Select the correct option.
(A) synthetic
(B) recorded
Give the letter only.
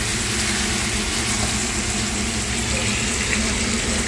B